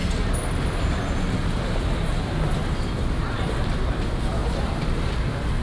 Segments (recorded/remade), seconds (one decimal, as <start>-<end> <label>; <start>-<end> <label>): 0.0-4.4 recorded; 4.4-5.1 remade; 5.1-5.6 recorded